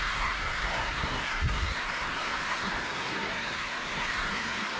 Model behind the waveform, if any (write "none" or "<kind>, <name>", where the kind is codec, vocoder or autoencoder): codec, SNAC